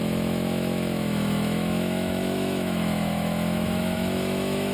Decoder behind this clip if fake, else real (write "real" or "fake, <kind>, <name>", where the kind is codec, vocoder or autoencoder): fake, autoencoder, DAC-VAE